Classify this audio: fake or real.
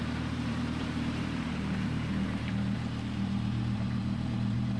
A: fake